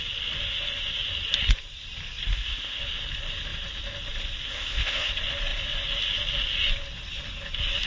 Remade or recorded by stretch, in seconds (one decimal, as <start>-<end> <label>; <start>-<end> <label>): 0.0-2.3 recorded; 2.3-2.8 remade; 2.8-4.5 recorded; 4.5-5.1 remade; 5.1-7.9 recorded